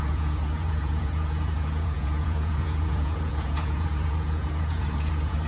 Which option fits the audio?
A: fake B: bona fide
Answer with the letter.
A